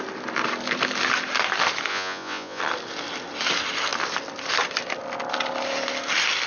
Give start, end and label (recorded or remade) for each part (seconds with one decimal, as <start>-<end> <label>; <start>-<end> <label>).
0.0-1.9 recorded; 1.9-2.6 remade; 2.6-6.5 recorded